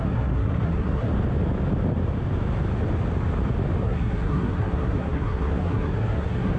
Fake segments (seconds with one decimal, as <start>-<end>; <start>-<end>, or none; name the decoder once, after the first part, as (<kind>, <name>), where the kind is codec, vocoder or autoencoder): 0.0-1.1 (codec, SNAC); 3.8-6.6